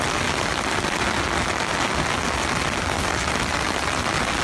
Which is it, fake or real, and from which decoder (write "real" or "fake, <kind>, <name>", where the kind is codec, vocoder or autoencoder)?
real